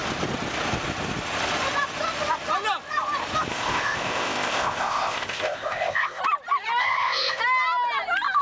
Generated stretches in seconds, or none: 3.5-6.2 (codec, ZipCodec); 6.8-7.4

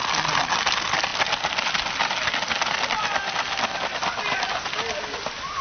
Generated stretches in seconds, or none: none

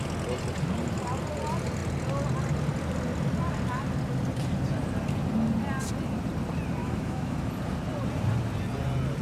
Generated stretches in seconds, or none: 6.8-7.5 (autoencoder, DAC-VAE)

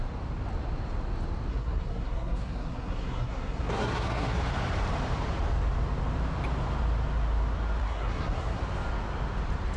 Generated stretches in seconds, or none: 1.5-4.4 (codec, SNAC); 7.8-8.6

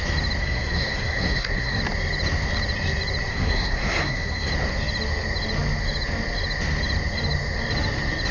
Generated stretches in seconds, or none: 0.4-1.8 (codec, SNAC); 3.3-4.5

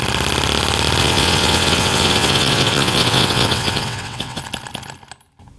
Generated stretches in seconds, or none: 1.0-4.4 (vocoder, WaveNeXt)